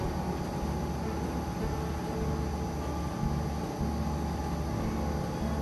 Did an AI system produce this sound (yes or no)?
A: no